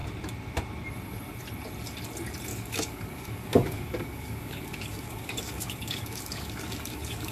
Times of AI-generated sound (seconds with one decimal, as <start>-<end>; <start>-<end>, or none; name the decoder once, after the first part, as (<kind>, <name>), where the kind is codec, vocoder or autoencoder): 2.5-7.3 (codec, DAC)